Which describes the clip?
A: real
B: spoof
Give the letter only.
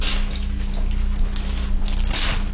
A